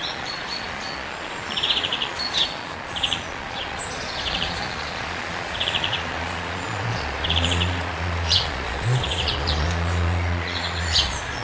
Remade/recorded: remade